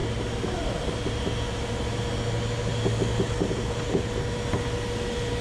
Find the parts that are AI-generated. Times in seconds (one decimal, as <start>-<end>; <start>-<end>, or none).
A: none

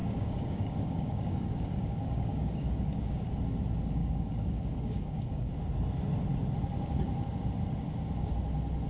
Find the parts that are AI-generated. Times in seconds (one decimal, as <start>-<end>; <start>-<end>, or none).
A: 0.0-3.3; 4.0-5.5

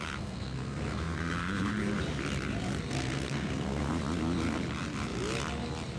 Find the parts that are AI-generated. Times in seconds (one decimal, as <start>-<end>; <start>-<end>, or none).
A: 0.0-1.7; 2.9-3.9